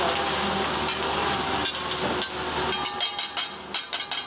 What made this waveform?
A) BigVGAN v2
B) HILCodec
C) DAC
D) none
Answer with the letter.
D